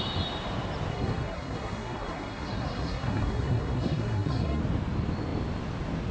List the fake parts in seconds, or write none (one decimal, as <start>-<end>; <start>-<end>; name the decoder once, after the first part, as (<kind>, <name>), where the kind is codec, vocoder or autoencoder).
0.9-4.6 (codec, SNAC)